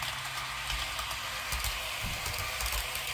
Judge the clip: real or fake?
real